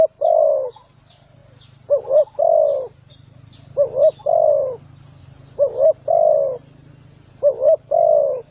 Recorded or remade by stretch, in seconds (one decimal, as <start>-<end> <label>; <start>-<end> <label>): 0.0-1.4 recorded; 1.4-3.1 remade; 3.1-8.5 recorded